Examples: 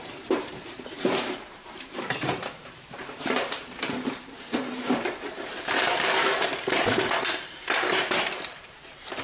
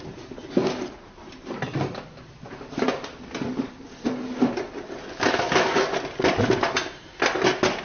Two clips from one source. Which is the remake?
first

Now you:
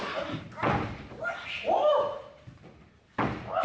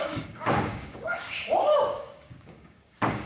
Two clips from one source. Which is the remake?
second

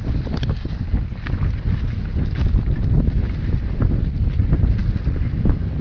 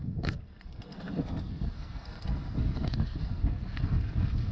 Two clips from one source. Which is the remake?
second